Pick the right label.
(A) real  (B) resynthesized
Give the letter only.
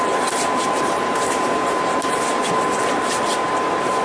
B